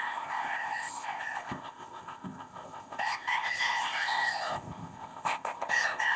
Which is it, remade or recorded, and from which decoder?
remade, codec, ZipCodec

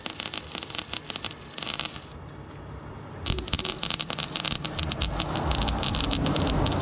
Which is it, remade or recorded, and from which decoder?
recorded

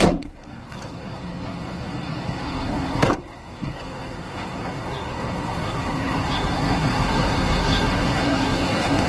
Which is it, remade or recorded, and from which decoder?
remade, codec, SNAC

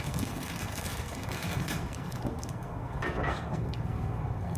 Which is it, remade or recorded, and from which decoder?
remade, codec, SNAC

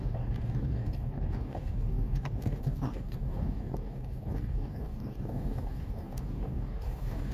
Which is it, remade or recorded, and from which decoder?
remade, codec, DAC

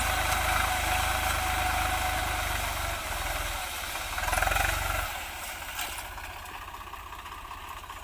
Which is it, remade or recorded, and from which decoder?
recorded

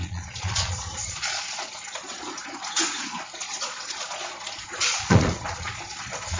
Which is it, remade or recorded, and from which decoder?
remade, vocoder, Vocos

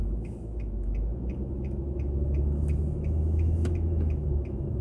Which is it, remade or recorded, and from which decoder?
remade, autoencoder, DAC-VAE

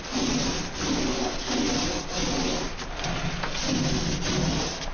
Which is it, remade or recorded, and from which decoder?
recorded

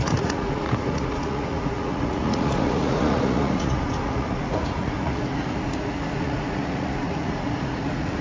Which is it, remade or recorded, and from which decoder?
remade, vocoder, Vocos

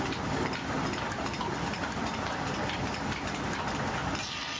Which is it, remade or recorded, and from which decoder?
recorded